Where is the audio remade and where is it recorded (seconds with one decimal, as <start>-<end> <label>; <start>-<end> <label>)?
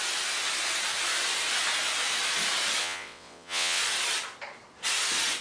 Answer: 0.0-2.8 recorded; 2.8-3.8 remade; 3.8-5.4 recorded